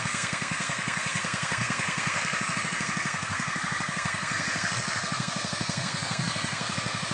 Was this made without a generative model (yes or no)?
no